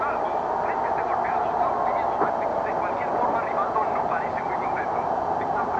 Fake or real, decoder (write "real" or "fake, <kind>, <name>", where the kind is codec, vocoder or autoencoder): real